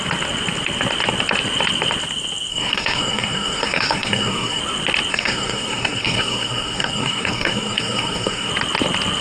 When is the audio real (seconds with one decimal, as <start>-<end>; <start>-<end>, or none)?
0.0-2.5; 4.6-5.1; 8.5-9.2